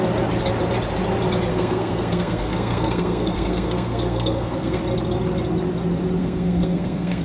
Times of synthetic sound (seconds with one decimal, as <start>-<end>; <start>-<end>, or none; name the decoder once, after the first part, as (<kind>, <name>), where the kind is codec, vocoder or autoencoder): 1.5-4.8 (codec, SNAC); 6.2-7.2